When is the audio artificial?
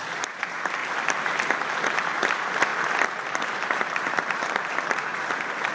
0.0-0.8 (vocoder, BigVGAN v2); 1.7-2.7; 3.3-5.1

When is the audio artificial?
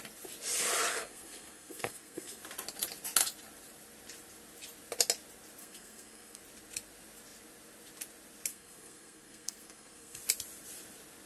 0.9-2.4 (codec, SNAC); 5.6-6.4; 8.5-10.2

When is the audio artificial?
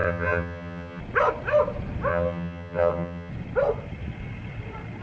0.0-1.0 (vocoder, HiFi-GAN); 2.1-3.3